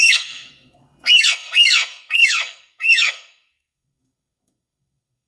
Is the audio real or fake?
fake